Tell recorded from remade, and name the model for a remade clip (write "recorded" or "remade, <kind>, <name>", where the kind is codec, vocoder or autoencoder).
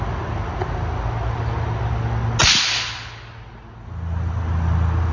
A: recorded